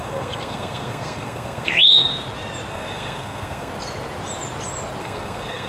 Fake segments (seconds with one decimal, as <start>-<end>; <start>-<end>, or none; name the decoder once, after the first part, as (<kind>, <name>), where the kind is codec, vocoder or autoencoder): 0.0-2.1 (codec, SNAC); 2.7-3.7; 5.0-5.7